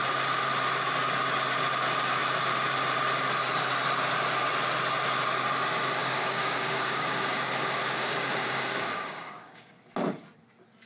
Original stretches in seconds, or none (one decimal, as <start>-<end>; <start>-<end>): 0.0-6.0; 9.8-10.9